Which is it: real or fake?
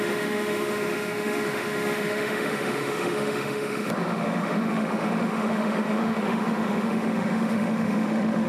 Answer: fake